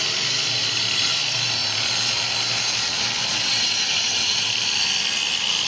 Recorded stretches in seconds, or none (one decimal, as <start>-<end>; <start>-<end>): 0.0-3.3; 4.5-5.7